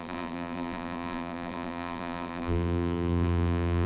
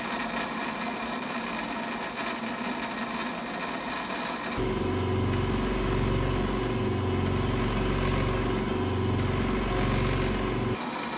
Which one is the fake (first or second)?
first